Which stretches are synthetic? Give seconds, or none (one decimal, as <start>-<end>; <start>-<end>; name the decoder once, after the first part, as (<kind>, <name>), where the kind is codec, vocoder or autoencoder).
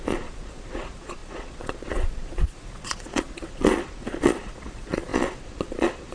0.0-6.1 (vocoder, Vocos)